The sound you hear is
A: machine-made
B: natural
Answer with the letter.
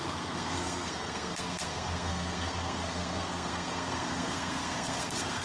A